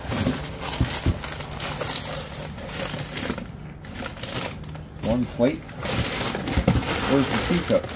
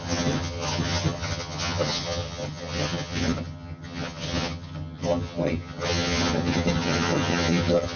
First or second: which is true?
first